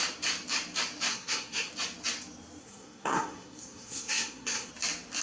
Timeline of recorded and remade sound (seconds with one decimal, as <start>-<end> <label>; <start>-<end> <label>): 0.0-1.1 recorded; 1.1-1.7 remade; 1.7-2.6 recorded; 2.6-4.7 remade; 4.7-5.2 recorded